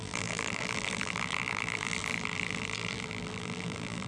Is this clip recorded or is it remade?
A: remade